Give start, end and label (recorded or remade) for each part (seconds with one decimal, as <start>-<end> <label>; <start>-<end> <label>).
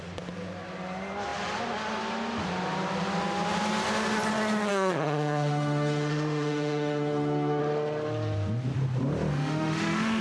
0.0-4.7 recorded; 4.7-7.6 remade; 7.6-9.3 recorded; 9.3-10.2 remade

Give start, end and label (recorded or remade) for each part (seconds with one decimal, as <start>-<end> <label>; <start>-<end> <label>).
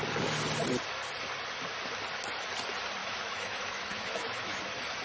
0.0-3.0 recorded; 3.0-4.6 remade; 4.6-5.0 recorded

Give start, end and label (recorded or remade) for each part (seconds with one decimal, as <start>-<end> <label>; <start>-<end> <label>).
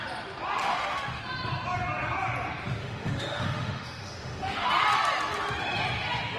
0.0-0.6 recorded; 0.6-1.2 remade; 1.2-2.8 recorded; 2.8-4.7 remade; 4.7-6.4 recorded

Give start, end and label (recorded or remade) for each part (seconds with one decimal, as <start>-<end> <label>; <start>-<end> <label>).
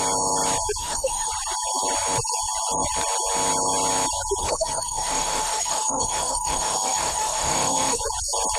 0.0-0.8 recorded; 0.8-1.3 remade; 1.3-4.4 recorded; 4.4-8.0 remade; 8.0-8.6 recorded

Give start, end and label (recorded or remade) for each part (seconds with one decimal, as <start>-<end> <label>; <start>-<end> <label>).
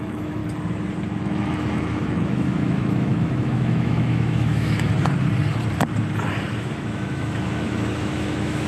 0.0-0.4 remade; 0.4-1.2 recorded; 1.2-4.9 remade; 4.9-6.6 recorded; 6.6-8.7 remade